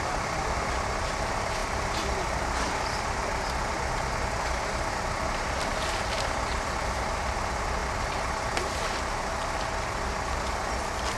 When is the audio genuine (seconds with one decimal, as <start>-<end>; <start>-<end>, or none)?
7.8-10.3